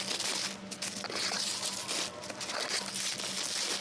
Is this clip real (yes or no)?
yes